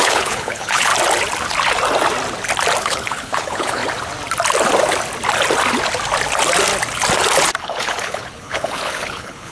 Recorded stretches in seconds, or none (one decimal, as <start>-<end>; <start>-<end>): 0.9-2.8; 3.8-7.6